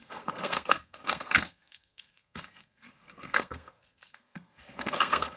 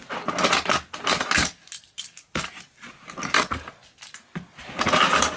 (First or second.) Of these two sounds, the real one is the second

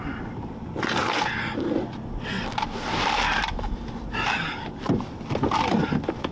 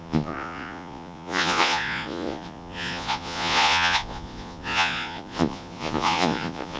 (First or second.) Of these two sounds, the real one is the first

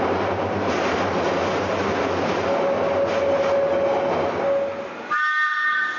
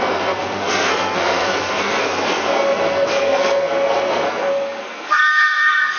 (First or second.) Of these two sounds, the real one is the first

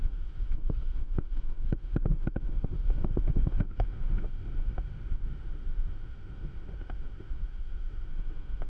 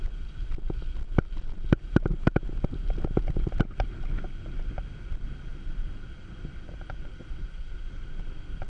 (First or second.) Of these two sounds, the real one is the second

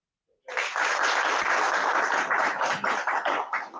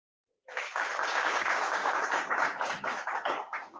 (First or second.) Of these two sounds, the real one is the first